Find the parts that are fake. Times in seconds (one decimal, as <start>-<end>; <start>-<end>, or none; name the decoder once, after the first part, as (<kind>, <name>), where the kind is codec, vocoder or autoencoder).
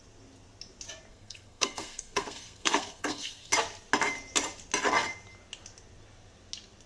1.1-3.5 (codec, SNAC)